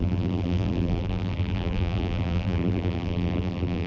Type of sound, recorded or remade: remade